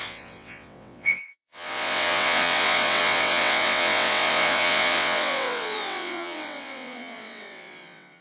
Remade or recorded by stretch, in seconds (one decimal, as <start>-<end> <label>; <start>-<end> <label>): 0.0-8.2 remade